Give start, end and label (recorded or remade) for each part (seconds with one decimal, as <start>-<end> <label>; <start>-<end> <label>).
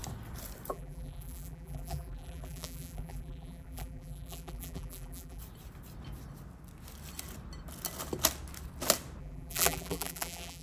0.0-0.7 recorded; 0.7-5.4 remade; 5.4-9.2 recorded; 9.2-10.6 remade